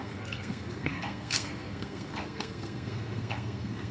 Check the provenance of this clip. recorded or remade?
remade